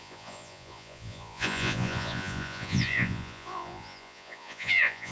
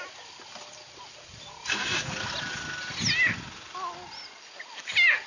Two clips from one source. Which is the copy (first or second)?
first